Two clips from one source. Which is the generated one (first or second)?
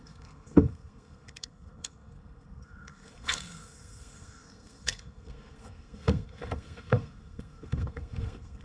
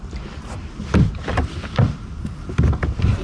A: first